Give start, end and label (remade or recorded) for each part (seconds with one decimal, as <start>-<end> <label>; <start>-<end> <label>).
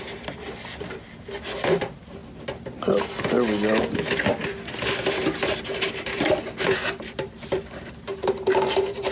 0.0-2.2 remade; 2.2-5.6 recorded; 5.6-9.1 remade